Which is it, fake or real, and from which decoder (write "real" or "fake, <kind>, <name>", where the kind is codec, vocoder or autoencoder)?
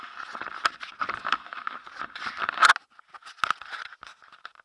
real